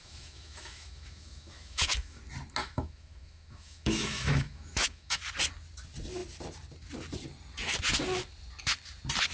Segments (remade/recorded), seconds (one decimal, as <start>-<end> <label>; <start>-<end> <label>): 0.0-2.2 remade; 2.2-2.6 recorded; 2.6-5.2 remade; 5.2-9.3 recorded